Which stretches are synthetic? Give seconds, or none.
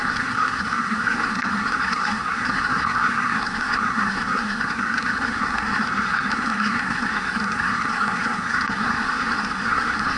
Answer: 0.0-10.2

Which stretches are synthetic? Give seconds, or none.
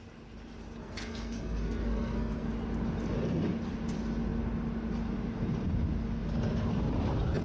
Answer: 0.8-2.5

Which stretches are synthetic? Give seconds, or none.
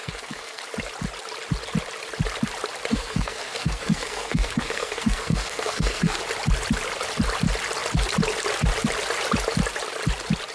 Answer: 0.0-0.6; 2.9-6.2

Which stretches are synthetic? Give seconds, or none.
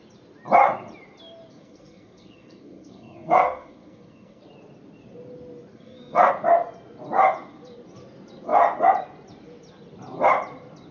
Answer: 1.5-4.4; 5.7-6.3